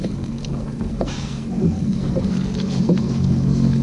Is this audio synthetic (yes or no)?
yes